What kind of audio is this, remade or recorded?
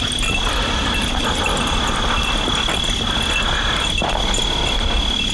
recorded